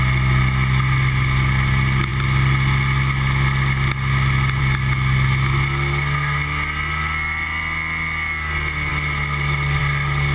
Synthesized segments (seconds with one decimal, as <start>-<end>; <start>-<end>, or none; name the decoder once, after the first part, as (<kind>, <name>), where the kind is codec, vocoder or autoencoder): 8.9-9.8 (vocoder, BigVGAN v2)